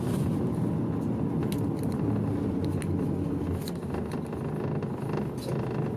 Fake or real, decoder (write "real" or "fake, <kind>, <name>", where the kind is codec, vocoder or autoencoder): real